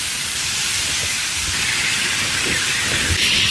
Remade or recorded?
recorded